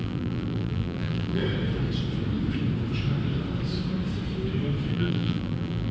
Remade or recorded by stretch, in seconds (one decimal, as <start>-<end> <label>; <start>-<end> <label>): 0.0-1.4 remade; 1.4-4.9 recorded; 4.9-5.9 remade